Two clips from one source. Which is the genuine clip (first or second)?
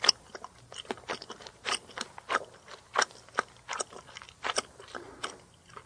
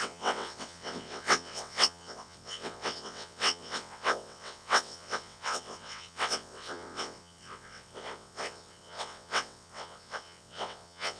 first